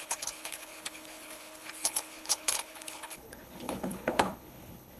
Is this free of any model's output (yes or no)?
no